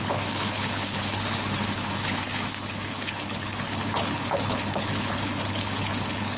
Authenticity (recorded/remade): remade